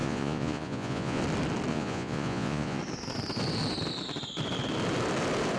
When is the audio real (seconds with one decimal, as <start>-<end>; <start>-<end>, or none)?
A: 1.2-1.7; 2.8-5.6